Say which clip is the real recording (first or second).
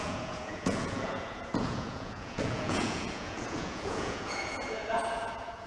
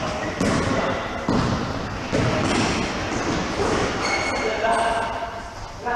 second